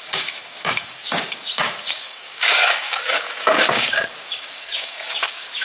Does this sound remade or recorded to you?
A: remade